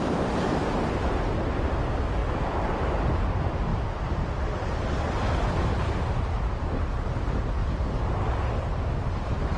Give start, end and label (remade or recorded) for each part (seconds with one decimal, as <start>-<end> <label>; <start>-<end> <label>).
0.0-2.2 recorded; 2.2-2.8 remade; 2.8-3.7 recorded; 3.7-5.6 remade; 5.6-7.6 recorded; 7.6-8.3 remade; 8.3-9.6 recorded